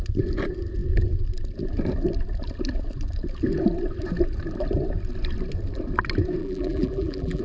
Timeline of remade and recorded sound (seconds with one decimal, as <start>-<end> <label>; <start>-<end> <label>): 0.0-6.4 recorded; 6.4-7.4 remade